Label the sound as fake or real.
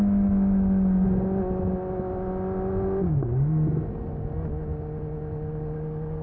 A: real